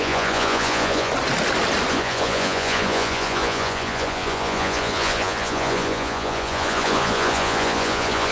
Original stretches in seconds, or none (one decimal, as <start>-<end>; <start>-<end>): 1.1-1.9